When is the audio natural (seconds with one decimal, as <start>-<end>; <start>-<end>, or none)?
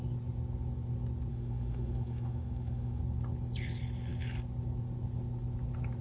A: 0.0-1.3; 3.0-6.0